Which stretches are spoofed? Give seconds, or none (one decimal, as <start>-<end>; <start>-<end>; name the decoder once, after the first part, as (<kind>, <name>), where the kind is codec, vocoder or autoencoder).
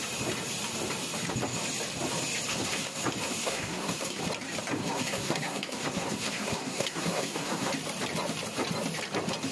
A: 2.5-3.0 (codec, SNAC); 3.4-4.2; 4.8-7.7